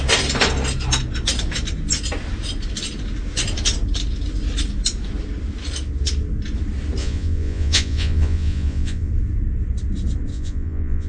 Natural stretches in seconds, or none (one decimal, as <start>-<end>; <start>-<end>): 0.0-7.0; 9.1-10.3